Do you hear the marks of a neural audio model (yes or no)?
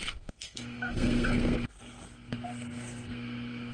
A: yes